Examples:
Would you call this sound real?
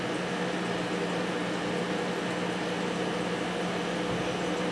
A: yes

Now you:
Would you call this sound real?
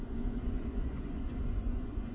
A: no